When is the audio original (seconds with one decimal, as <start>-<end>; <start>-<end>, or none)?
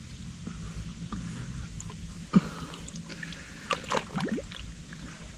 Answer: 0.0-0.9; 1.4-5.4